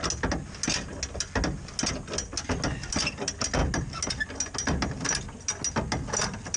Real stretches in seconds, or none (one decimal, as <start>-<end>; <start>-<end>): 0.0-6.6